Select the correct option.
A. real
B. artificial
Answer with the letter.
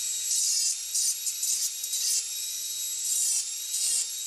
A